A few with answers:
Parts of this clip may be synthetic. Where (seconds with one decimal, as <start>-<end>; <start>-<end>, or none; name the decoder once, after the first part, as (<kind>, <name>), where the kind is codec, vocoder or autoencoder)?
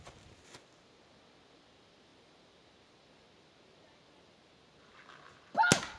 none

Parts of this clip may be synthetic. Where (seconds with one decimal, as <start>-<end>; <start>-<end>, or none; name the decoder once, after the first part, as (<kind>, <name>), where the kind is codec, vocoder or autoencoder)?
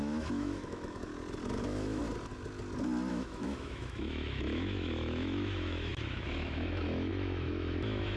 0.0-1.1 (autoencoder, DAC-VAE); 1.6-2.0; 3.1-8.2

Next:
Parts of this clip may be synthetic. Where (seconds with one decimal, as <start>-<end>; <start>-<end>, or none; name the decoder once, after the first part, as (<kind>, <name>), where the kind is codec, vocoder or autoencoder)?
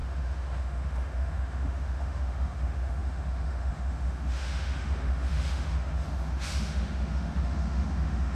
0.0-8.3 (autoencoder, DAC-VAE)